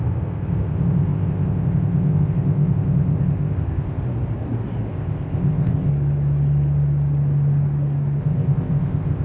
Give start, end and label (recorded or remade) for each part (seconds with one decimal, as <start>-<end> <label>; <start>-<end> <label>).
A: 0.0-4.0 remade; 4.0-4.9 recorded; 4.9-5.9 remade; 5.9-8.2 recorded; 8.2-9.2 remade